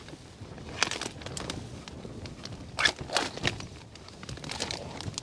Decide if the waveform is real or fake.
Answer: real